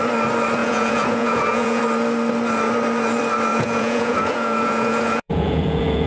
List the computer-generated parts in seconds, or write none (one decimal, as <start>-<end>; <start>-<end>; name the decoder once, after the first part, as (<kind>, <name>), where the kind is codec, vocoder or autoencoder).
0.6-1.8 (vocoder, Vocos); 3.5-6.1